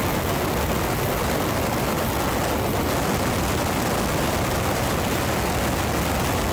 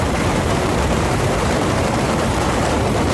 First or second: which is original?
first